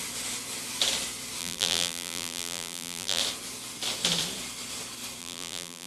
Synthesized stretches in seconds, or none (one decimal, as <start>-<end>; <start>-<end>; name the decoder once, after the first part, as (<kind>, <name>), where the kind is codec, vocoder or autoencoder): 1.4-3.2 (vocoder, BigVGAN v2); 5.2-5.9